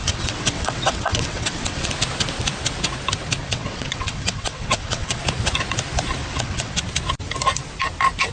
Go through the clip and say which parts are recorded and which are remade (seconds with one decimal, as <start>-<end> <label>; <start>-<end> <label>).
0.0-1.9 remade; 1.9-3.4 recorded; 3.4-5.2 remade; 5.2-6.2 recorded; 6.2-6.8 remade; 6.8-8.3 recorded